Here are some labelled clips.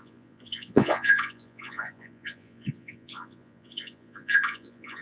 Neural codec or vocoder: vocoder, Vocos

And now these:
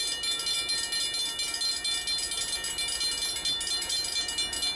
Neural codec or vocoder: none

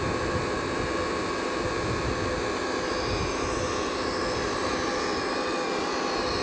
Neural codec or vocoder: none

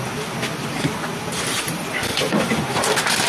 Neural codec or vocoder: none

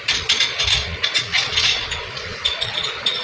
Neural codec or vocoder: vocoder, Vocos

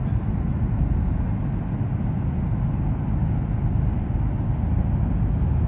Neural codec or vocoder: none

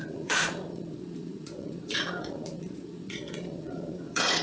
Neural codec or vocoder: vocoder, Vocos